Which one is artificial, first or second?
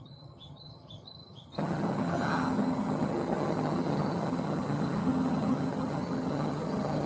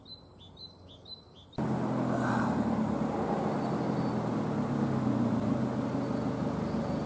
first